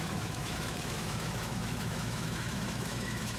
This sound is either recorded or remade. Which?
remade